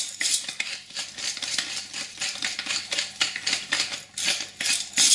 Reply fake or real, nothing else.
real